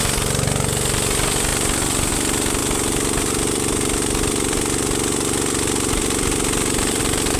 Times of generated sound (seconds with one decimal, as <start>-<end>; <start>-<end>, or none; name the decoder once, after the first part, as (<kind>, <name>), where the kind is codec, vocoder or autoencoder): 1.5-2.1 (vocoder, BigVGAN v2); 2.6-7.0